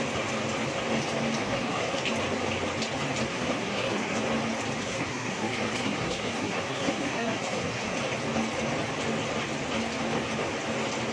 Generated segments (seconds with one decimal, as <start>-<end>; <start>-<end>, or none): 1.4-2.0; 3.3-4.2; 4.8-8.0